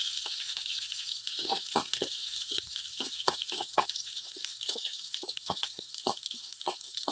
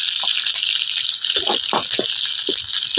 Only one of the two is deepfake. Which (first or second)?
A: first